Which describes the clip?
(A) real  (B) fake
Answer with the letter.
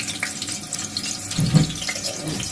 A